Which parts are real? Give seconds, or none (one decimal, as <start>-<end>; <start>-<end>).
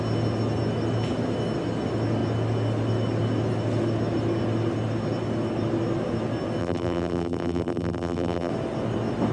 0.0-6.6; 8.5-9.3